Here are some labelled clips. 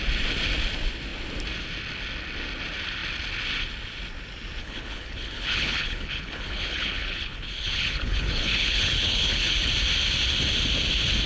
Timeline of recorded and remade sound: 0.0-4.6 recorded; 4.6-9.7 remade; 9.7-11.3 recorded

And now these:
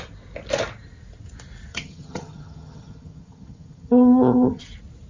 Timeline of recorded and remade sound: 0.0-1.7 recorded; 1.7-4.6 remade; 4.6-5.1 recorded

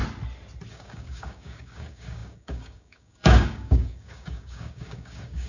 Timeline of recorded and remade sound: 0.0-0.7 recorded; 0.7-5.5 remade